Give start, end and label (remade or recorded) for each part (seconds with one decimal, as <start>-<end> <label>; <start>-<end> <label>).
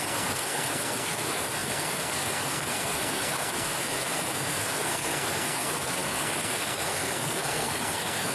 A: 0.0-8.3 remade